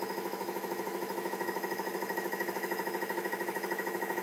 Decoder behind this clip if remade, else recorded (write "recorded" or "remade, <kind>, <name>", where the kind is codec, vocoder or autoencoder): remade, autoencoder, DAC-VAE